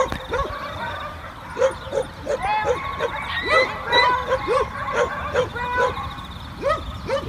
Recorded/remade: recorded